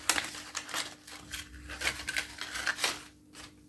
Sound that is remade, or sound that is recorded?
recorded